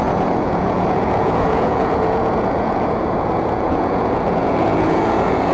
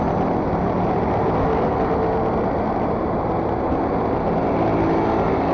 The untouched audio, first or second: second